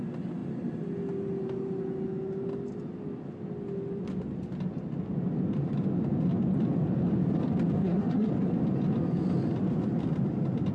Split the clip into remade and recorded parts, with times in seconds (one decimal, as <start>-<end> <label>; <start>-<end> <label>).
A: 0.0-7.8 recorded; 7.8-8.3 remade; 8.3-10.7 recorded